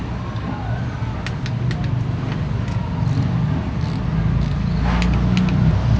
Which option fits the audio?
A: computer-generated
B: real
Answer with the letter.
B